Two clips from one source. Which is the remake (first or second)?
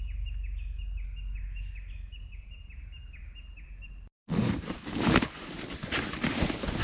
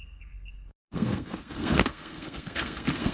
second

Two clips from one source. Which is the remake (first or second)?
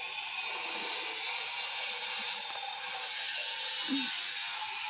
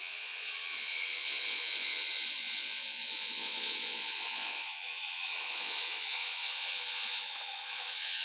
second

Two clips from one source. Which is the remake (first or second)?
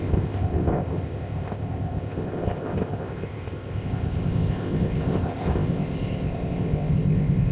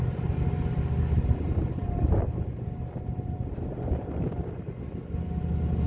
first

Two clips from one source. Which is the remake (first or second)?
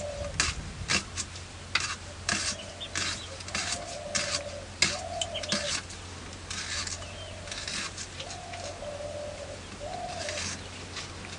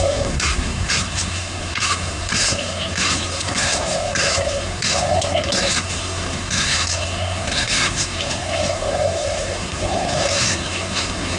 second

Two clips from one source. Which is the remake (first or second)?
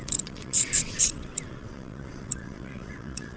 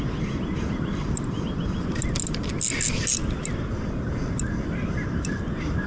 first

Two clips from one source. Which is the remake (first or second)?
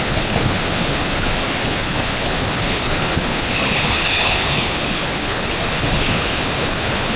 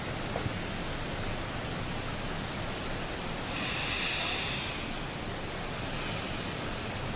first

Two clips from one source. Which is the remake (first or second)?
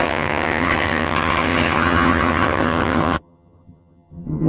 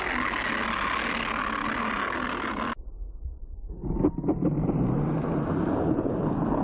first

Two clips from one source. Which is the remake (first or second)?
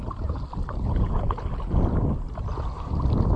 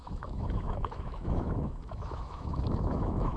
second